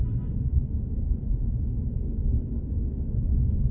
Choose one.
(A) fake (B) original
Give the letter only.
B